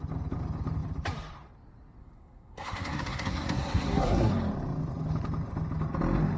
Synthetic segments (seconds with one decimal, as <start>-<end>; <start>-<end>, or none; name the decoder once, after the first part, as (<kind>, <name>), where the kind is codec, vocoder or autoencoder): 2.0-4.3 (codec, SNAC)